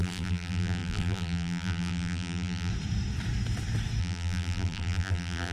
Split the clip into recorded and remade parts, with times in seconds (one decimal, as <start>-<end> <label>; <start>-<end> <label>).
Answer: 0.0-2.7 remade; 2.7-4.0 recorded; 4.0-5.5 remade